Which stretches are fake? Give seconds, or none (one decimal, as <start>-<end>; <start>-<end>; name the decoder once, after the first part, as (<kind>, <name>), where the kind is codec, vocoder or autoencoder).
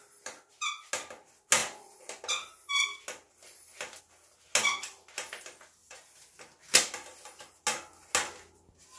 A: none